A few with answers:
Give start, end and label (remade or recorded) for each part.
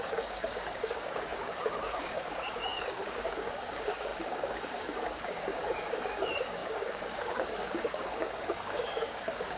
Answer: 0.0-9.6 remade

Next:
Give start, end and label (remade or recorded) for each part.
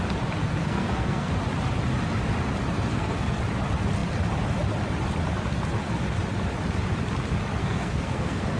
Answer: 0.0-0.6 recorded; 0.6-1.3 remade; 1.3-2.9 recorded; 2.9-3.4 remade; 3.4-7.6 recorded; 7.6-8.6 remade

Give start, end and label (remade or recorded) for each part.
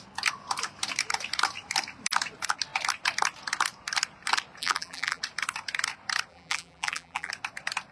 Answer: 0.0-4.6 recorded; 4.6-5.2 remade; 5.2-6.3 recorded; 6.3-7.3 remade; 7.3-7.9 recorded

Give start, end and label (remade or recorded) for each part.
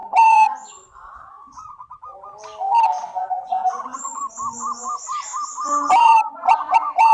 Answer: 0.0-1.8 remade; 1.8-3.4 recorded; 3.4-4.2 remade; 4.2-6.0 recorded; 6.0-7.1 remade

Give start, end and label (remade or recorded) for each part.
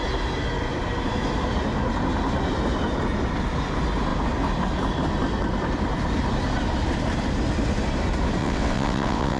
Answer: 0.0-8.4 recorded; 8.4-9.4 remade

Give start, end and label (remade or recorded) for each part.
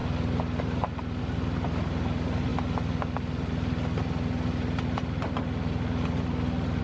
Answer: 0.0-6.8 recorded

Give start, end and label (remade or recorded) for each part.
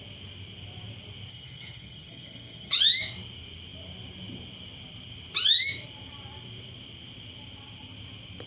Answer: 0.0-1.3 recorded; 1.3-2.8 remade; 2.8-8.5 recorded